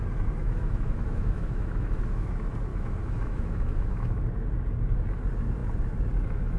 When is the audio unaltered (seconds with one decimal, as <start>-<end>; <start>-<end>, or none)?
0.0-0.4; 2.3-2.7; 4.2-6.6